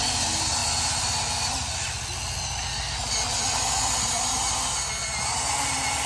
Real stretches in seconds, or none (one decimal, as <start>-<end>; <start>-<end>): 0.0-6.1

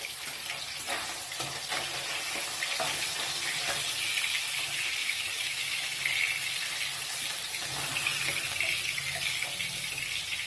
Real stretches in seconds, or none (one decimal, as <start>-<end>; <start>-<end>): 0.0-5.0; 6.0-10.5

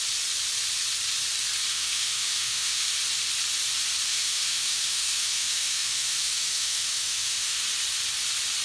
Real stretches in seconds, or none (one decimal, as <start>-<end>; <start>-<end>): 0.0-1.7; 2.9-4.1; 7.6-8.6

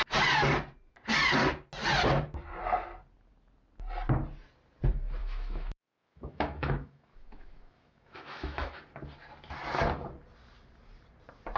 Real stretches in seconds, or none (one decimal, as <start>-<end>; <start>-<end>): 0.0-5.2; 8.8-11.6

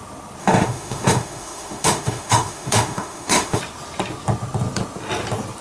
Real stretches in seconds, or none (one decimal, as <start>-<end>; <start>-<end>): 0.0-0.4; 3.6-5.6

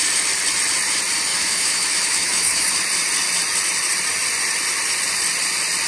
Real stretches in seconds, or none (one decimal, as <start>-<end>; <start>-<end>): 0.0-1.3; 2.7-5.9

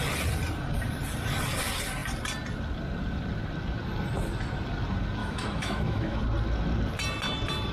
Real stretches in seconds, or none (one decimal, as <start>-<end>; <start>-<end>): 0.0-5.2; 6.2-7.7